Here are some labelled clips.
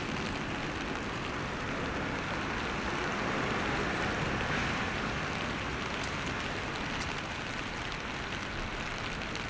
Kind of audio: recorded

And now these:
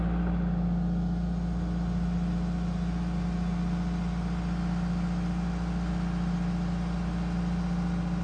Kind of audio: recorded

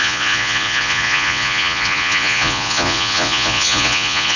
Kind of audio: remade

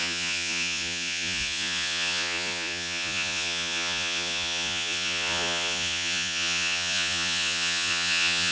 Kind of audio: remade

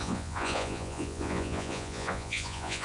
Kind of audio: remade